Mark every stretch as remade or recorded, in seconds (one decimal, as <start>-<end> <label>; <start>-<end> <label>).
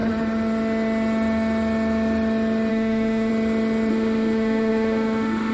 0.0-2.7 recorded; 2.7-3.3 remade; 3.3-3.9 recorded; 3.9-5.5 remade